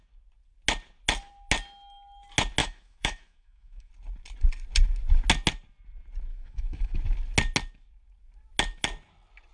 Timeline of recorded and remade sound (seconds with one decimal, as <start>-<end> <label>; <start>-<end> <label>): 0.0-2.6 recorded; 2.6-3.9 remade; 3.9-6.3 recorded; 6.3-6.9 remade; 6.9-9.5 recorded

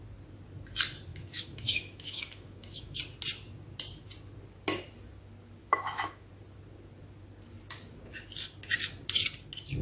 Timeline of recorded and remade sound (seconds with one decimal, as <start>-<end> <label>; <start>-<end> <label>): 0.0-1.1 recorded; 1.1-3.0 remade; 3.0-5.6 recorded; 5.6-6.3 remade; 6.3-9.8 recorded

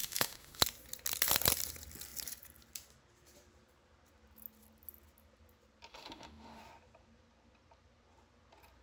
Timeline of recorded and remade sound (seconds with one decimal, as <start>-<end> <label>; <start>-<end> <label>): 0.0-0.6 remade; 0.6-5.9 recorded; 5.9-6.6 remade; 6.6-8.8 recorded